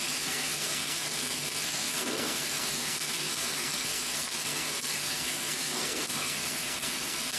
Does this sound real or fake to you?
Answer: fake